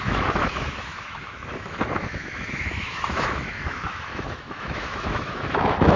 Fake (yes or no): yes